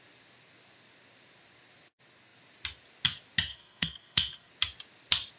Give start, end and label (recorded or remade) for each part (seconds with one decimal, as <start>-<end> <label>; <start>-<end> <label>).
0.0-3.5 recorded; 3.5-4.5 remade; 4.5-5.4 recorded